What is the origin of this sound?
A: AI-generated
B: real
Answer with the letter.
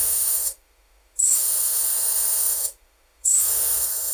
A